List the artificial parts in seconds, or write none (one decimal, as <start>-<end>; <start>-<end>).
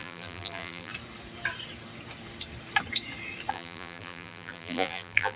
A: 0.0-0.9; 3.5-5.4